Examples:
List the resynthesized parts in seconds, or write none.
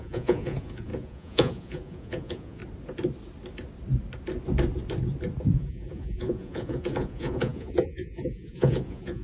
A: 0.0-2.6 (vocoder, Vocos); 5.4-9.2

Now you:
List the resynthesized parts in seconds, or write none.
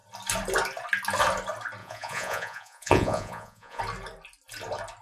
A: 1.8-3.8 (vocoder, Vocos)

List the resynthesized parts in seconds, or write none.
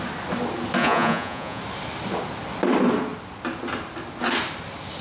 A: 0.8-1.6 (vocoder, Vocos)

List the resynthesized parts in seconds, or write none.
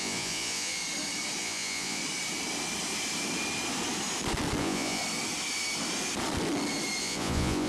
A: 0.0-0.8 (vocoder, Vocos); 1.4-2.0; 4.6-5.0; 7.0-7.7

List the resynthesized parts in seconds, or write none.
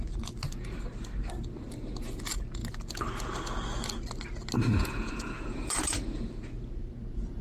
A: 4.8-6.4 (vocoder, Vocos)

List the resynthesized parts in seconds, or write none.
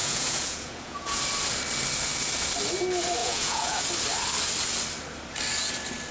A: 0.0-1.2 (vocoder, Vocos); 3.2-3.8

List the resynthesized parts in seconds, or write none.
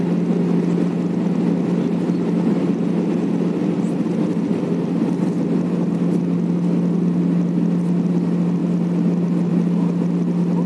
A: none